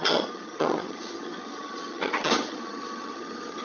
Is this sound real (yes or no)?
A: no